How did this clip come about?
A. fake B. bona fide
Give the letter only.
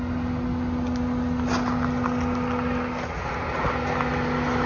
B